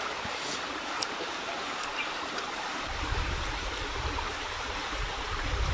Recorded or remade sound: remade